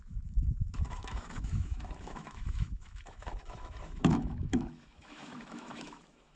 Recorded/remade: remade